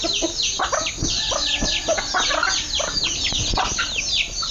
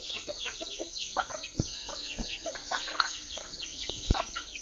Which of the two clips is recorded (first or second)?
first